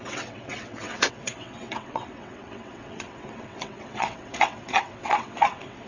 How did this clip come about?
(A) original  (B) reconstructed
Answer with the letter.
B